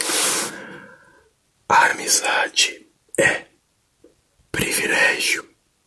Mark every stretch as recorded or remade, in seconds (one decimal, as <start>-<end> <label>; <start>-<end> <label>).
0.0-5.9 recorded